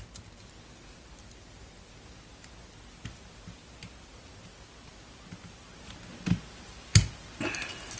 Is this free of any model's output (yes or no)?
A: yes